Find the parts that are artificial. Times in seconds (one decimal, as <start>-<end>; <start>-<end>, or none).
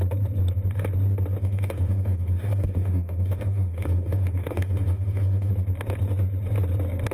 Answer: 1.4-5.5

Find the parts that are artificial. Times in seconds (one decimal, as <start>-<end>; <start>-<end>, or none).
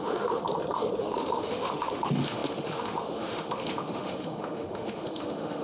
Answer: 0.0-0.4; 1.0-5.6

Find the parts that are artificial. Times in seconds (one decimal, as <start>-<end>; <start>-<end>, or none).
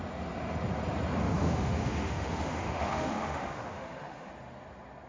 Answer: 1.2-4.3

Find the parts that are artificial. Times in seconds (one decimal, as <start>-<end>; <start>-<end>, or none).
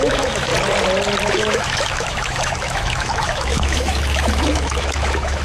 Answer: 0.0-0.5; 1.3-5.4